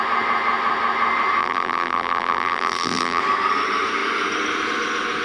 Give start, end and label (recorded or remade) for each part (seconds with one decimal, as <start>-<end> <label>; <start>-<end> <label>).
0.0-1.4 recorded; 1.4-3.2 remade; 3.2-5.2 recorded